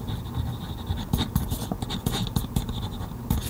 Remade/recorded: recorded